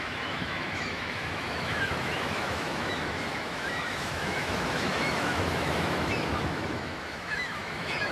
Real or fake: fake